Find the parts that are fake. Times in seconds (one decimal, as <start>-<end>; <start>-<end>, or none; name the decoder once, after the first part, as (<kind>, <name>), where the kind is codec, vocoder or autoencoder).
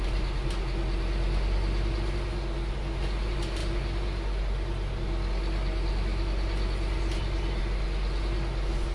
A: none